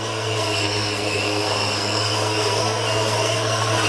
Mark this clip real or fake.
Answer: fake